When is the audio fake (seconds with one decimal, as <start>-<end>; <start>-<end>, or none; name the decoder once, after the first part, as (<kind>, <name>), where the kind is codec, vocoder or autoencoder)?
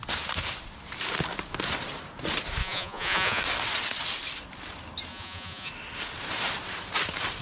2.6-3.4 (vocoder, Vocos); 5.1-5.7